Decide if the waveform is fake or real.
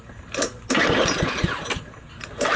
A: real